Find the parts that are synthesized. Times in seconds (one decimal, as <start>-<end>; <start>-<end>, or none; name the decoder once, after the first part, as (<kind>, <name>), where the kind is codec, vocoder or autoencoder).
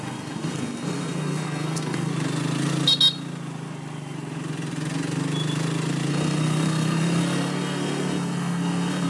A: 0.0-2.1 (codec, SNAC); 6.1-9.1